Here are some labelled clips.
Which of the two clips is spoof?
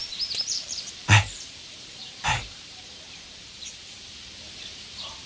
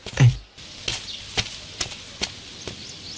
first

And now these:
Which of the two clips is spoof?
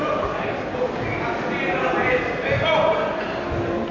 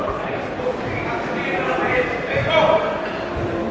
second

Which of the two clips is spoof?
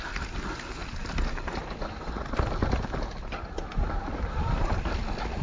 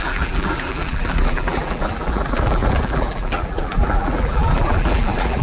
second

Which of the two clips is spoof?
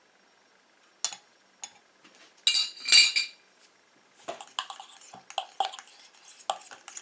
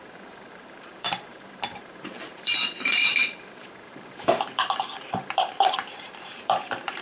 second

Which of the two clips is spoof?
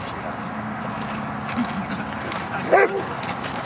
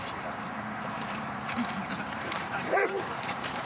second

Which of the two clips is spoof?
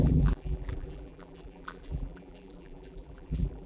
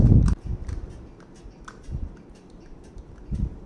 first